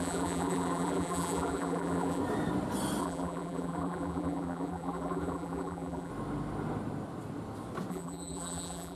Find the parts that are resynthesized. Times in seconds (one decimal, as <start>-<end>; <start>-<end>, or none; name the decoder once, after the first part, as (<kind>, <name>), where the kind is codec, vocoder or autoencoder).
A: 0.0-2.2 (vocoder, BigVGAN v2); 3.0-6.1; 7.9-9.0